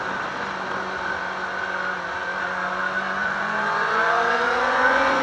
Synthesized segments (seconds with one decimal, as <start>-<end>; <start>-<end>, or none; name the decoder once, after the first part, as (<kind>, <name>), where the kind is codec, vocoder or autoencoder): 3.2-5.2 (vocoder, Vocos)